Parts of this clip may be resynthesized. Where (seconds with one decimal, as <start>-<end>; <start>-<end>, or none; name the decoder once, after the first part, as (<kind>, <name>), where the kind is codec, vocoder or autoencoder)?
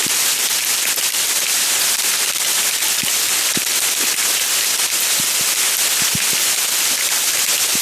none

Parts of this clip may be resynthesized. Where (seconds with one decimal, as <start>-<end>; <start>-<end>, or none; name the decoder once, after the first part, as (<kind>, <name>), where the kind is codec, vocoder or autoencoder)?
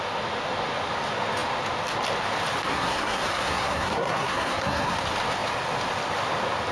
2.7-5.0 (codec, SNAC)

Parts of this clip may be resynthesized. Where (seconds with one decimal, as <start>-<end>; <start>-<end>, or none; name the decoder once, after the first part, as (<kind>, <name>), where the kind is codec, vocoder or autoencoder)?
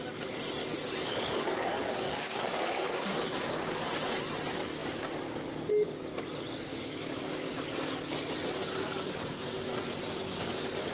0.6-3.1 (codec, DAC); 6.7-7.5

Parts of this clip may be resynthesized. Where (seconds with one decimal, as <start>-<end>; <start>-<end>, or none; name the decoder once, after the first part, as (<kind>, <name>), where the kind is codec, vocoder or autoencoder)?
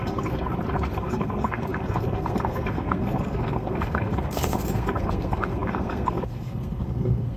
0.0-0.5 (codec, SNAC); 1.0-7.4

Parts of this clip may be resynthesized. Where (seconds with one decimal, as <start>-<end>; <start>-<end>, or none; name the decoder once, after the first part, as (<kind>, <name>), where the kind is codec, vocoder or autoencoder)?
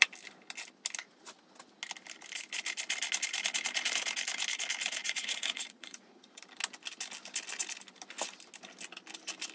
5.0-6.4 (vocoder, Vocos)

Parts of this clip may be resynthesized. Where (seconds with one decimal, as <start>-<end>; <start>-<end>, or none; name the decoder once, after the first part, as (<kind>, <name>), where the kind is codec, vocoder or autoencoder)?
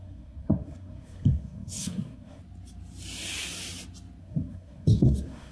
0.0-2.4 (codec, SNAC); 4.2-5.5